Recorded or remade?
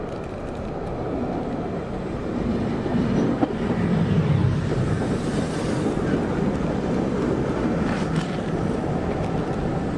recorded